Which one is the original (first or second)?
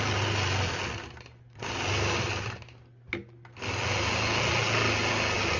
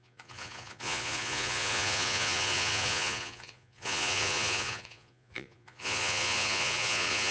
first